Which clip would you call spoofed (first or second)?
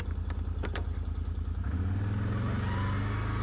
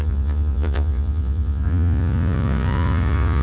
second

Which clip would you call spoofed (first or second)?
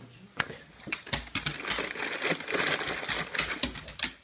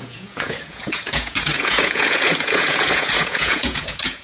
second